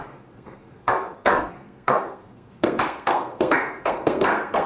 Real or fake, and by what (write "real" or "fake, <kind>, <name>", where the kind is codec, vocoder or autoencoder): fake, codec, SNAC